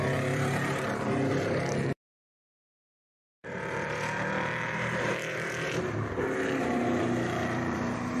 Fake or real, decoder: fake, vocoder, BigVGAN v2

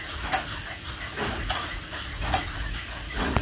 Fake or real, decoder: fake, vocoder, Vocos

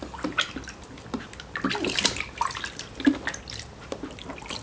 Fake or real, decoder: real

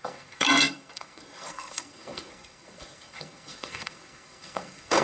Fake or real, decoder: fake, codec, SNAC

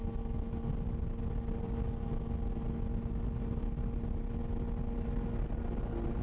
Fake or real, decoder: real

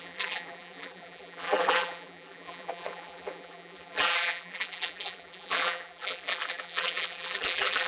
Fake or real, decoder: fake, vocoder, BigVGAN v2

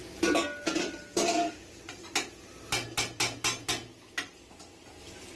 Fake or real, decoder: real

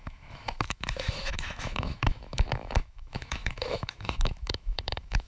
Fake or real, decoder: fake, autoencoder, DAC-VAE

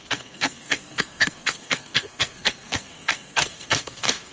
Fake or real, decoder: fake, codec, SNAC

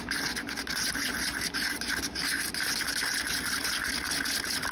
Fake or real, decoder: real